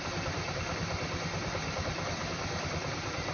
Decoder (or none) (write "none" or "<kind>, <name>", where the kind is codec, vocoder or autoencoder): none